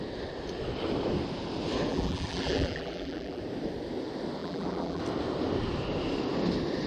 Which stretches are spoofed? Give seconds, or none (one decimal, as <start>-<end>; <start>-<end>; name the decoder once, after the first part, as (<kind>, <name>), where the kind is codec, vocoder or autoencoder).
1.9-3.4 (vocoder, BigVGAN v2); 4.4-5.0